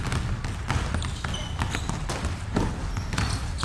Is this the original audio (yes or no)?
yes